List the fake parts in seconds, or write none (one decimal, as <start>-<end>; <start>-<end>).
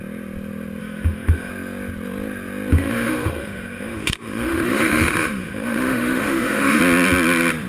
0.8-1.5; 2.7-6.8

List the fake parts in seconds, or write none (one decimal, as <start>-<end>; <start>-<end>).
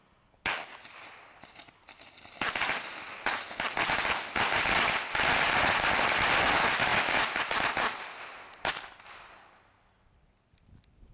none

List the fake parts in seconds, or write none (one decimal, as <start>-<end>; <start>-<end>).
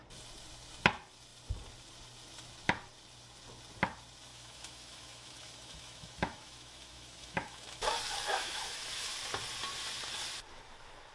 4.3-7.8; 8.3-9.1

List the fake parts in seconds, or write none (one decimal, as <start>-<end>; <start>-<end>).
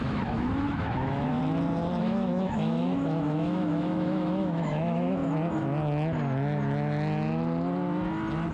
0.0-1.4; 2.0-5.2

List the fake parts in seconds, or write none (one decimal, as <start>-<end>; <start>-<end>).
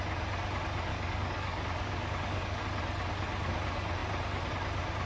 0.9-2.6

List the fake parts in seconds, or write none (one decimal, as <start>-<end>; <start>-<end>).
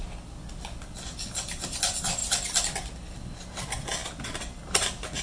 none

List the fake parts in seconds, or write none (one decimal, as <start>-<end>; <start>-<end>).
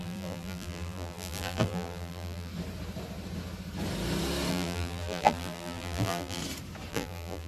0.0-2.5; 4.5-6.4; 6.9-7.5